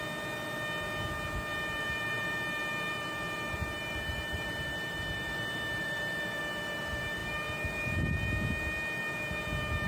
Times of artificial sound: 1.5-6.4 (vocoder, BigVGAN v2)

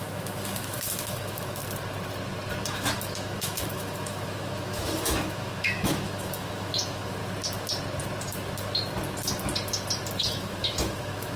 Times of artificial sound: 0.0-1.6 (autoencoder, DAC-VAE); 2.6-7.2; 10.2-11.4